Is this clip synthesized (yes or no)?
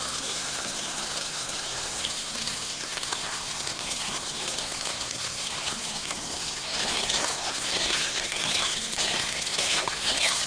yes